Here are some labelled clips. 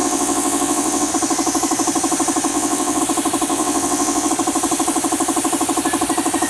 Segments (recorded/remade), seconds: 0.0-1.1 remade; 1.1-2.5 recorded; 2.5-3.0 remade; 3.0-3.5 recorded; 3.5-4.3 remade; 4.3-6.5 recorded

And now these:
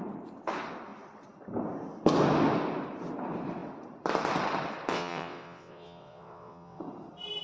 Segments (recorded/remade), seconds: 0.0-4.9 recorded; 4.9-6.8 remade; 6.8-7.4 recorded

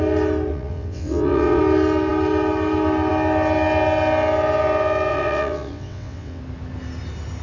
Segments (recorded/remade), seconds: 0.0-0.5 recorded; 0.5-1.6 remade; 1.6-5.1 recorded; 5.1-6.4 remade; 6.4-7.4 recorded